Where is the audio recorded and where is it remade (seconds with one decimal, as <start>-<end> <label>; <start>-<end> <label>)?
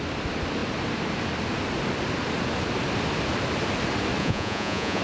0.0-4.2 recorded; 4.2-5.0 remade